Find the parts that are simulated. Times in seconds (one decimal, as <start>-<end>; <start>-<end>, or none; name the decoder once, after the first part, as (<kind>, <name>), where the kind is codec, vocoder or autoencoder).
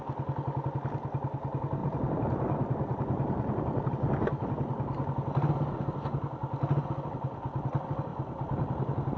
1.8-3.9 (vocoder, BigVGAN v2); 8.1-9.2